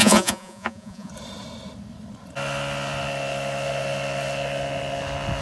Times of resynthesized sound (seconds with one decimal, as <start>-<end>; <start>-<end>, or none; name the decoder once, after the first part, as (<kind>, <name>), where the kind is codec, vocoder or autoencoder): 0.0-1.1 (vocoder, Vocos)